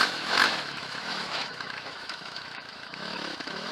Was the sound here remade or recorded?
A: remade